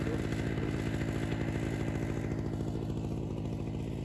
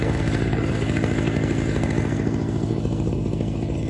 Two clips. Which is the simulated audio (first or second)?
second